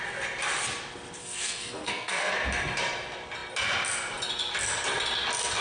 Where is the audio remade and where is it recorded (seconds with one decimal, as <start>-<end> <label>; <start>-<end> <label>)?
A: 0.0-1.2 recorded; 1.2-2.3 remade; 2.3-5.6 recorded